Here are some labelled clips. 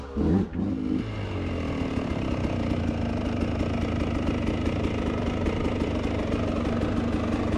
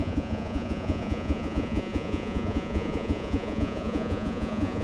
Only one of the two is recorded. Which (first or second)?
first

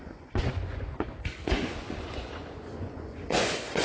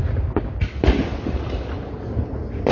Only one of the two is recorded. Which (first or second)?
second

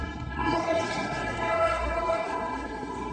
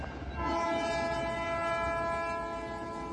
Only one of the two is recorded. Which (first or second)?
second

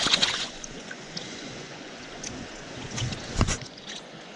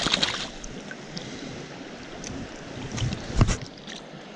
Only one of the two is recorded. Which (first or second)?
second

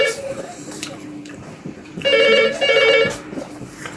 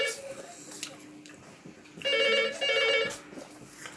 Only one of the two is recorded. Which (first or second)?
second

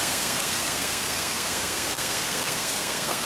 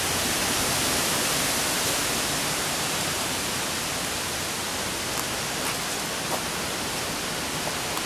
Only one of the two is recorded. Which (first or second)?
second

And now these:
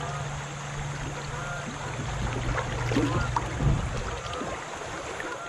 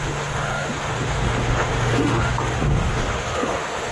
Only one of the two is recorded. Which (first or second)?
first